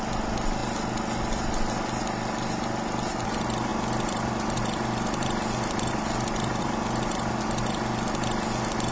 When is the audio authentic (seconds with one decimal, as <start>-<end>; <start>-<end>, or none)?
0.0-3.7; 7.4-8.9